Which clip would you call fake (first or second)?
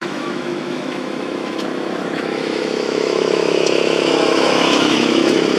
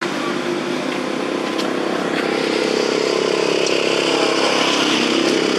first